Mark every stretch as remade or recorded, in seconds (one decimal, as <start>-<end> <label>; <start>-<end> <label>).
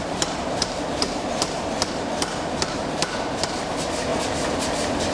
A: 0.0-4.1 remade; 4.1-5.1 recorded